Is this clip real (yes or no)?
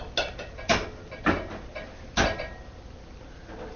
yes